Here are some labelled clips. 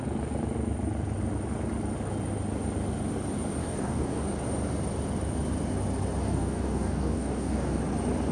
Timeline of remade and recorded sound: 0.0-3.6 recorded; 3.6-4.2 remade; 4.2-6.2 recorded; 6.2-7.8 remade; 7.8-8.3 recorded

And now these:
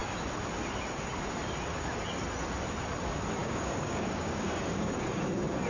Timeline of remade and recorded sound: 0.0-3.4 recorded; 3.4-5.2 remade; 5.2-5.7 recorded

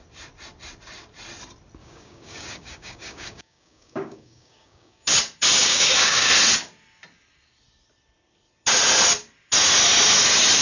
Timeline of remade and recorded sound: 0.0-1.8 recorded; 1.8-5.1 remade; 5.1-5.6 recorded; 5.6-6.3 remade; 6.3-10.6 recorded